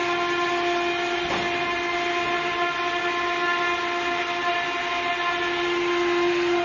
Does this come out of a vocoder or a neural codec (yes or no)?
no